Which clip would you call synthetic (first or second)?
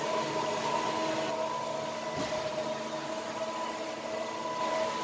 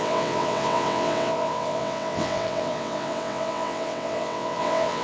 second